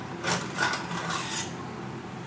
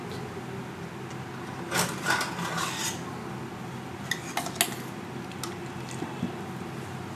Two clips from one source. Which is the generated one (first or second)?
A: first